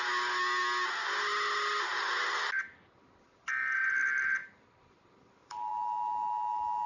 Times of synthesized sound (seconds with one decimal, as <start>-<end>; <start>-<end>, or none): none